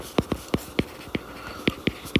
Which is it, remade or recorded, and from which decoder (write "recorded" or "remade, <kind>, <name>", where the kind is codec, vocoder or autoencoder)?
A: recorded